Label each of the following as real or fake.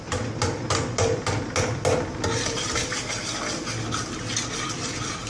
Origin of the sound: real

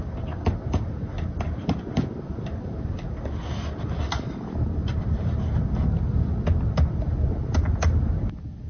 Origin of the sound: real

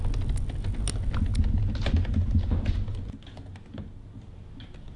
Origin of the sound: real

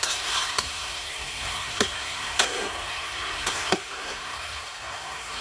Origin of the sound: fake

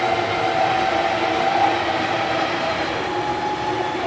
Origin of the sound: real